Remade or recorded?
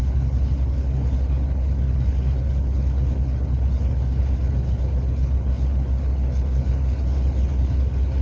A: remade